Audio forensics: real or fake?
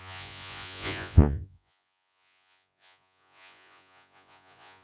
fake